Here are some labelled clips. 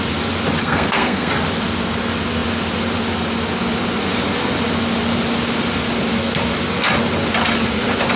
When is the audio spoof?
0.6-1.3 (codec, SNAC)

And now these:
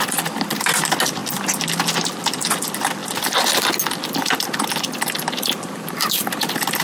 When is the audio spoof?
none

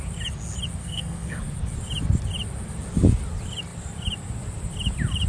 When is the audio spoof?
0.8-1.4 (codec, SNAC)

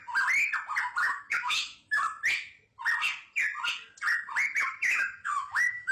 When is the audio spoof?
1.0-2.0 (autoencoder, DAC-VAE); 4.6-5.9

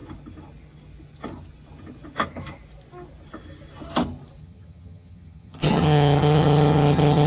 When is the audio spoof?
4.4-7.3 (vocoder, HiFi-GAN)